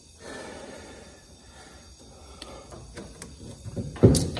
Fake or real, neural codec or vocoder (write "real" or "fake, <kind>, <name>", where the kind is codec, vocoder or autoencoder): real